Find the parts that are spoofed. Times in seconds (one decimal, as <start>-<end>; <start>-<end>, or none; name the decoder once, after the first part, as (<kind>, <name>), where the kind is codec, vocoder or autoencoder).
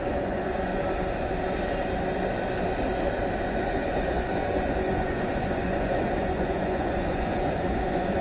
0.0-0.7 (vocoder, Vocos); 3.4-8.2